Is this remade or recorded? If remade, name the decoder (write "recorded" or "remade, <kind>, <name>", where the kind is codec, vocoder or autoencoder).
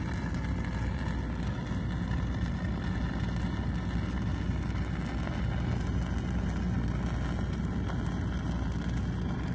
recorded